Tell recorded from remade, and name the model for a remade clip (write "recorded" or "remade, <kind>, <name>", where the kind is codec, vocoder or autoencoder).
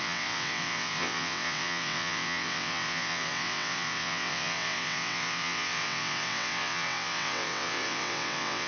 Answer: remade, vocoder, WaveNeXt